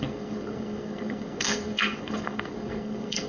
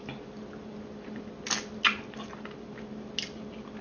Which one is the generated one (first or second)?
first